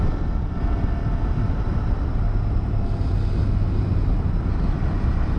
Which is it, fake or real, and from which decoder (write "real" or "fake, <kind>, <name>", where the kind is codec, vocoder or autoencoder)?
real